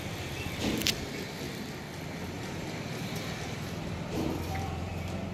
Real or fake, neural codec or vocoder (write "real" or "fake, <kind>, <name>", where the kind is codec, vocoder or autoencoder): fake, vocoder, BigVGAN v2